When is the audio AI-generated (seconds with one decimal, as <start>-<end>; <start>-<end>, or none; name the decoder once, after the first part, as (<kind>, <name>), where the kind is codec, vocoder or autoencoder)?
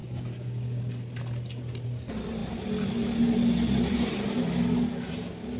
0.0-0.8 (codec, DAC)